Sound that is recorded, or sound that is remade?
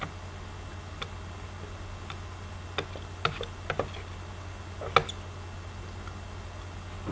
recorded